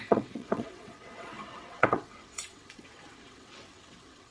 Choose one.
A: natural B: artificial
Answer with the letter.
B